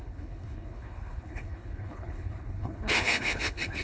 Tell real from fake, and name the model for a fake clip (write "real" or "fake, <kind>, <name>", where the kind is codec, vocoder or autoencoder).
fake, codec, HILCodec